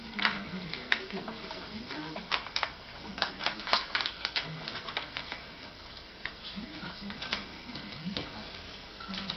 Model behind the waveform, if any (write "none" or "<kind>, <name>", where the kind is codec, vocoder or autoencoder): codec, SNAC